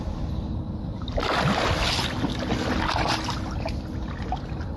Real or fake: real